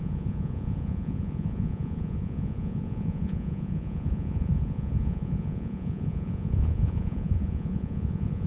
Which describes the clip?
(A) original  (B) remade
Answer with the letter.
B